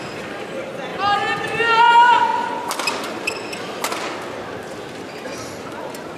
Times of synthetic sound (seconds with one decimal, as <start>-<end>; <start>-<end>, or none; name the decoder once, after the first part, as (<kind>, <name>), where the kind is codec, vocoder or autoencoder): none